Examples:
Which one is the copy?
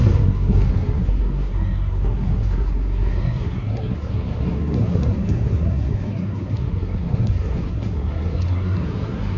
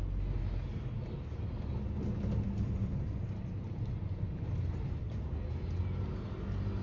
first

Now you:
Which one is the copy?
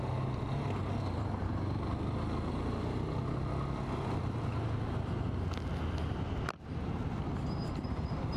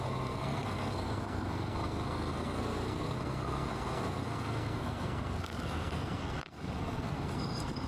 second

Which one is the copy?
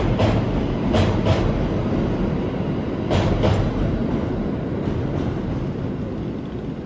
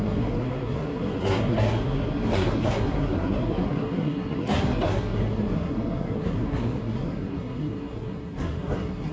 second